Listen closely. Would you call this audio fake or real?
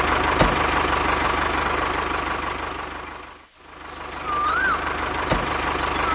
real